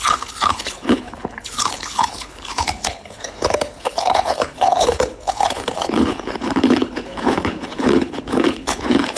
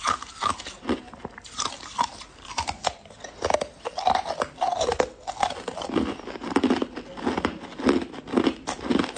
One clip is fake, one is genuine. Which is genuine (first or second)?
second